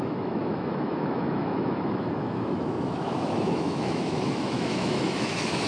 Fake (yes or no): yes